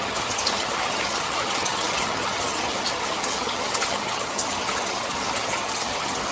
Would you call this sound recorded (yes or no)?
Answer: no